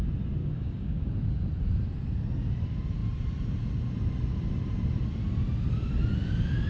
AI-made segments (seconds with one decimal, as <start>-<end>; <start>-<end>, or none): 0.4-1.1